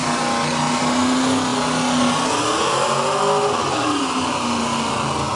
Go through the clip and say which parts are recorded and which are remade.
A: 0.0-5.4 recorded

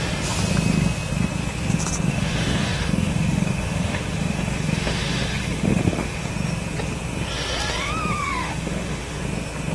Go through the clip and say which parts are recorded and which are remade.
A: 0.0-2.1 recorded; 2.1-6.3 remade; 6.3-8.2 recorded; 8.2-9.2 remade; 9.2-9.7 recorded

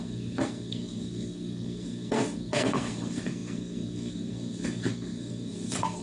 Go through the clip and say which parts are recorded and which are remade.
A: 0.0-6.0 remade

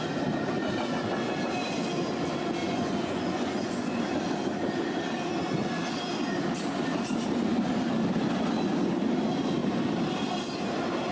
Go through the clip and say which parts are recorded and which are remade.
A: 0.0-2.6 recorded; 2.6-4.0 remade; 4.0-11.1 recorded

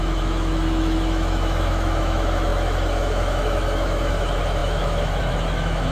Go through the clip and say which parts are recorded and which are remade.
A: 0.0-5.9 remade

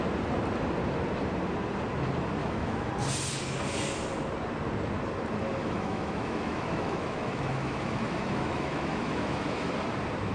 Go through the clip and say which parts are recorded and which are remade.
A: 0.0-2.4 recorded; 2.4-2.9 remade; 2.9-5.6 recorded; 5.6-9.7 remade; 9.7-10.3 recorded

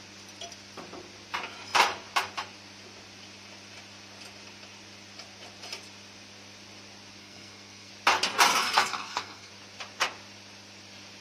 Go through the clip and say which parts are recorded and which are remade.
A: 0.0-7.2 recorded; 7.2-7.9 remade; 7.9-8.5 recorded; 8.5-9.5 remade; 9.5-11.2 recorded

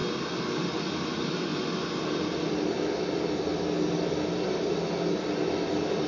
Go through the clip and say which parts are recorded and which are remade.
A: 0.0-6.1 recorded